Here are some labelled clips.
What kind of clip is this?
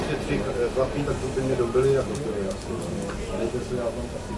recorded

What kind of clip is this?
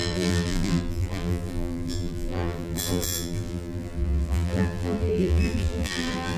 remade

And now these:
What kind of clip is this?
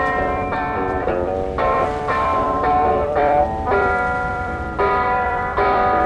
remade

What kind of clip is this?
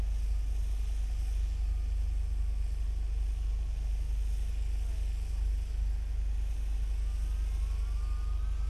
recorded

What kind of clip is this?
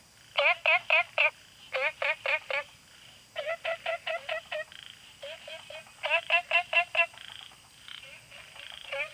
recorded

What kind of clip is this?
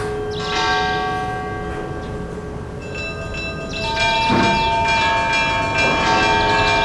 recorded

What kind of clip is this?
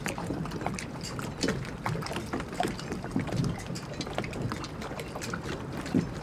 recorded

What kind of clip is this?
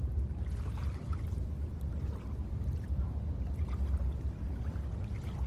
recorded